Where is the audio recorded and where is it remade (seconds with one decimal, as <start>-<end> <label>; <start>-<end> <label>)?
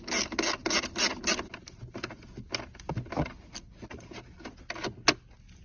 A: 0.0-5.6 recorded